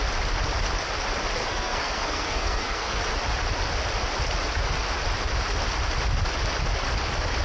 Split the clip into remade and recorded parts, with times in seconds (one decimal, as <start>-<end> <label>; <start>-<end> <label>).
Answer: 0.0-1.4 recorded; 1.4-3.0 remade; 3.0-7.4 recorded

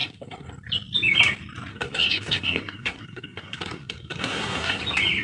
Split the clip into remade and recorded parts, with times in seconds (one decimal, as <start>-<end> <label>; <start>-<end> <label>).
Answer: 0.0-0.5 remade; 0.5-1.7 recorded; 1.7-4.8 remade; 4.8-5.2 recorded

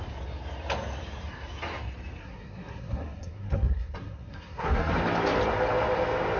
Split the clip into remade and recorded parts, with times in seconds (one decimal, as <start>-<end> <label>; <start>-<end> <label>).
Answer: 0.0-2.2 recorded; 2.2-4.9 remade; 4.9-6.4 recorded

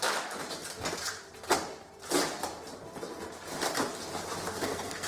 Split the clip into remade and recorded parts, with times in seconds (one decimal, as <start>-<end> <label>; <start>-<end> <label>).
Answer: 0.0-4.5 recorded; 4.5-5.1 remade